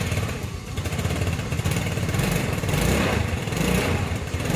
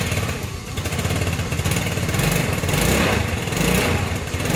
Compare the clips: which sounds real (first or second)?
second